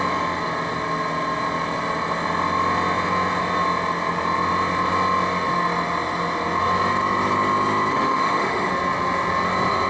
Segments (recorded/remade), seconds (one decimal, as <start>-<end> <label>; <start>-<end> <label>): 0.0-7.9 recorded; 7.9-8.7 remade; 8.7-9.9 recorded